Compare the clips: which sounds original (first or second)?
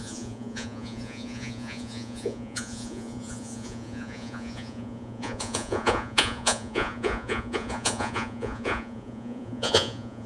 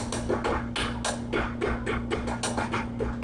second